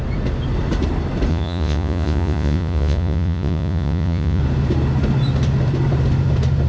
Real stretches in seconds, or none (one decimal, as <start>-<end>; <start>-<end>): 0.0-1.3; 4.4-6.7